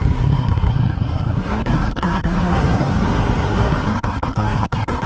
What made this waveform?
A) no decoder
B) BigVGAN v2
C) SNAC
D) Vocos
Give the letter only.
C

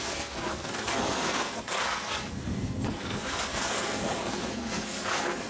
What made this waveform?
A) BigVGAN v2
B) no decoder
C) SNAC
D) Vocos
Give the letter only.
C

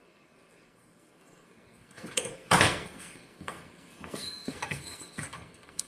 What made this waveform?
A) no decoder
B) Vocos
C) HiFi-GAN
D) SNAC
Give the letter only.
D